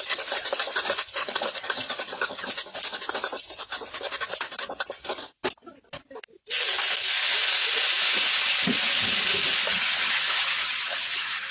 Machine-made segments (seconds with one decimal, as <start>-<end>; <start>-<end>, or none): 1.2-2.5; 9.7-11.5